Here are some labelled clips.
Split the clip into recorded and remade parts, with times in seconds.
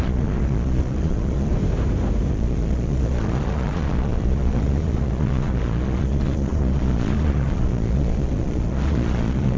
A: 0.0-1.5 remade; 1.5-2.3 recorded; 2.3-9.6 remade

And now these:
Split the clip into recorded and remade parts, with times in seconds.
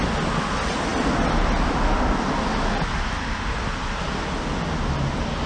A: 0.0-5.5 recorded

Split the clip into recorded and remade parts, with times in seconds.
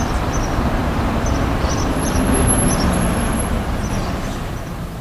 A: 0.0-0.8 recorded; 0.8-3.8 remade; 3.8-5.0 recorded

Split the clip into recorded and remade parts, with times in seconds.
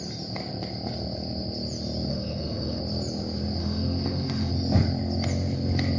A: 0.0-2.1 recorded; 2.1-2.8 remade; 2.8-3.6 recorded; 3.6-4.5 remade; 4.5-6.0 recorded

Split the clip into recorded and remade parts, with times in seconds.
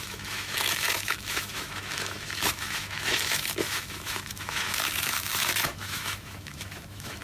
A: 0.0-7.2 remade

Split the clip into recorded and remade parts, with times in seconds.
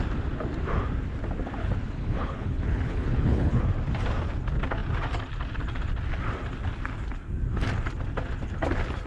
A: 0.0-1.6 recorded; 1.6-3.6 remade; 3.6-9.1 recorded